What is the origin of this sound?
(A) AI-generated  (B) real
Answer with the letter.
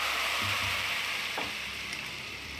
A